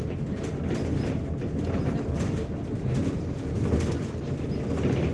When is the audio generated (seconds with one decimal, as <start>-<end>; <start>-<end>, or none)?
none